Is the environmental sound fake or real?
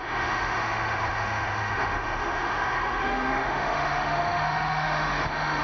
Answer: fake